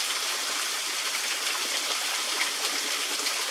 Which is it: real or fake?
real